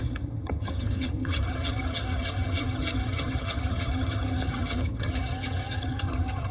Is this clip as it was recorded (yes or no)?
no